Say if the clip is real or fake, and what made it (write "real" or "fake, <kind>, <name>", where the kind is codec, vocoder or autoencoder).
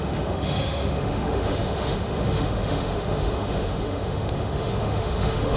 fake, autoencoder, DAC-VAE